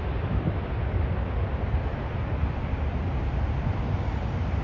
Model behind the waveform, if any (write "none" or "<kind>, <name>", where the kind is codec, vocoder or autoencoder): none